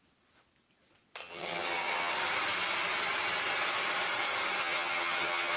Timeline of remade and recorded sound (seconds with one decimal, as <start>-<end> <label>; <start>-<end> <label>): 0.0-1.2 recorded; 1.2-2.1 remade; 2.1-4.6 recorded; 4.6-5.6 remade